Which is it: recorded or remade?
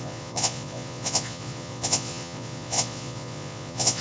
remade